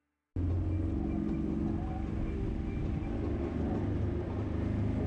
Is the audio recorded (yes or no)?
yes